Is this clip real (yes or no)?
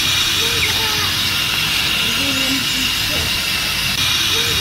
yes